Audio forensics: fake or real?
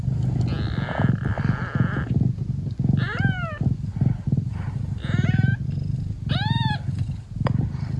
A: real